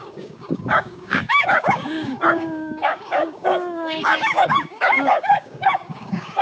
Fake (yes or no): yes